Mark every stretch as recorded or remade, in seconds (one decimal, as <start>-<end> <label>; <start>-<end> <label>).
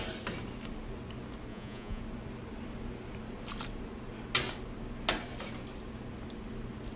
0.0-1.5 recorded; 1.5-2.0 remade; 2.0-7.0 recorded